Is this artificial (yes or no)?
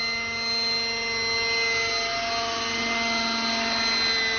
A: no